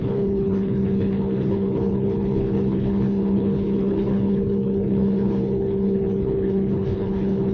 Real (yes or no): no